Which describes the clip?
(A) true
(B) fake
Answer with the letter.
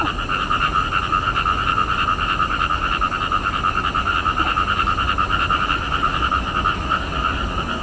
A